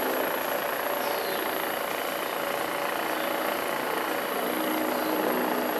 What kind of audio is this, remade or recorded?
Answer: recorded